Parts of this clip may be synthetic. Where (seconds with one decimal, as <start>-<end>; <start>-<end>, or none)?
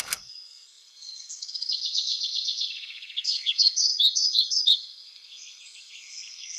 0.0-6.6